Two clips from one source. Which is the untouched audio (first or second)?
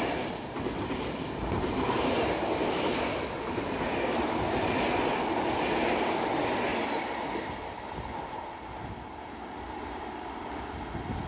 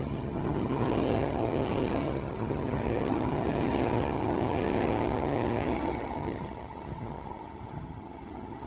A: first